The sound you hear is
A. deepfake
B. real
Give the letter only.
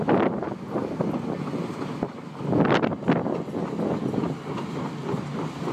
B